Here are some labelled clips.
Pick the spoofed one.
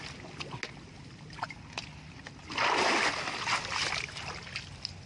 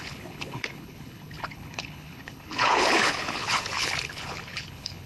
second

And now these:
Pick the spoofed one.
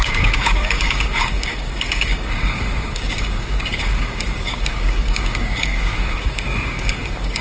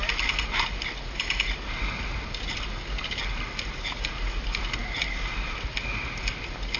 first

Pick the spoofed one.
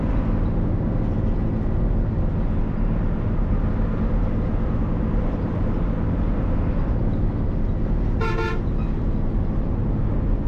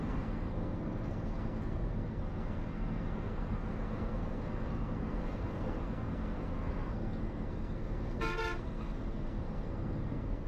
second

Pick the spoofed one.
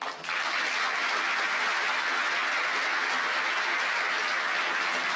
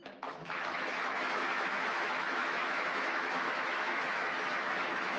second